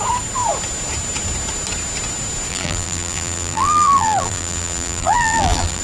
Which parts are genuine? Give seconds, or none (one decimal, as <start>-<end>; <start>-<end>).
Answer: 0.0-2.5